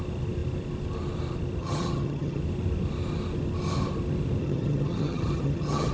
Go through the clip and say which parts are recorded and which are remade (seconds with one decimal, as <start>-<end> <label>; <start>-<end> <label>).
0.0-1.6 recorded; 1.6-2.4 remade; 2.4-4.4 recorded; 4.4-5.9 remade